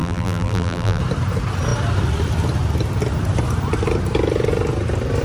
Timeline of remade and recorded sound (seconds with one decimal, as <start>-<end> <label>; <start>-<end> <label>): 0.0-1.0 remade; 1.0-5.2 recorded